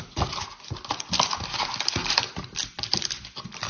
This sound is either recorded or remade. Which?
recorded